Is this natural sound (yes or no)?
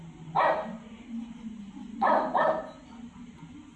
yes